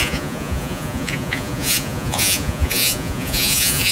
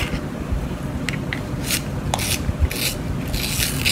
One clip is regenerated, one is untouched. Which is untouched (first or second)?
second